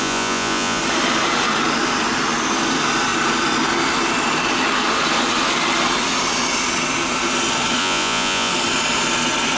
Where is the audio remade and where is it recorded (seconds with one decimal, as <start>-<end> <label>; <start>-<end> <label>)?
0.0-0.8 remade; 0.8-7.8 recorded; 7.8-8.5 remade; 8.5-9.6 recorded